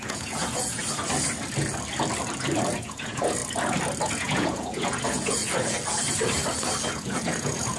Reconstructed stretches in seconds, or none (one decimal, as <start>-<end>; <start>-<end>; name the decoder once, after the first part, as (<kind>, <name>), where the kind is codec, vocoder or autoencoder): 0.0-0.8 (vocoder, Vocos); 2.8-3.4; 4.0-5.4; 6.9-7.8